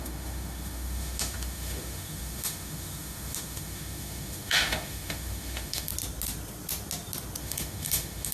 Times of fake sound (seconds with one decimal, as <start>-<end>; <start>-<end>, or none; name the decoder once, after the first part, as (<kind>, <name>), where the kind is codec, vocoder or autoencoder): 0.0-5.9 (autoencoder, DAC-VAE); 7.4-8.3

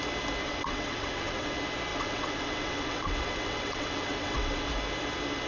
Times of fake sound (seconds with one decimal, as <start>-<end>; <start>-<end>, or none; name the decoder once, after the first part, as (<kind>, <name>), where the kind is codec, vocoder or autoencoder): 0.4-1.5 (vocoder, WaveNeXt); 1.9-4.7

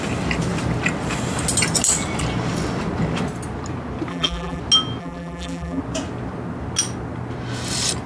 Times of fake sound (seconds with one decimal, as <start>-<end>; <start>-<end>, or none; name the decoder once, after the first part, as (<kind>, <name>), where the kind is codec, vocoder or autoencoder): 4.1-4.6 (vocoder, BigVGAN v2); 5.0-5.8